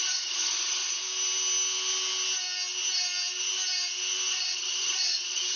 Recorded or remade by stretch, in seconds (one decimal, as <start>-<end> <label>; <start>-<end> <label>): 0.0-1.0 remade; 1.0-4.3 recorded; 4.3-5.6 remade